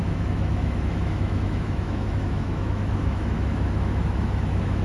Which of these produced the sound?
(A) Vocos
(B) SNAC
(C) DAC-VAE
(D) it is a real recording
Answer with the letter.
C